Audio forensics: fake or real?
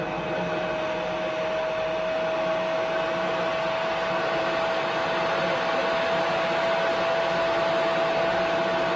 real